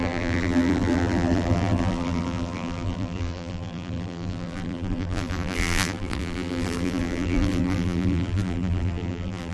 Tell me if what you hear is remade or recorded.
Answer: remade